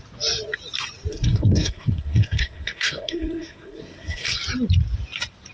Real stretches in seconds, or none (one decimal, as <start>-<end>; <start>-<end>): 0.0-1.1; 4.4-5.5